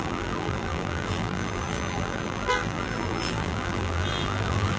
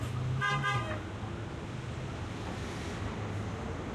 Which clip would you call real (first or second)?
second